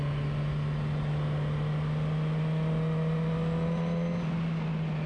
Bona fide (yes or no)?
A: yes